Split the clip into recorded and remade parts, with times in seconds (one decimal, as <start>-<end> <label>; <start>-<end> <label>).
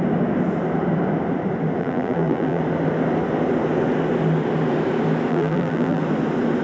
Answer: 0.0-1.8 recorded; 1.8-2.6 remade; 2.6-5.3 recorded; 5.3-6.0 remade; 6.0-6.6 recorded